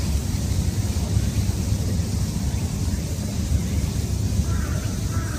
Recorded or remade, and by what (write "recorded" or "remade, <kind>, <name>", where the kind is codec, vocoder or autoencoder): recorded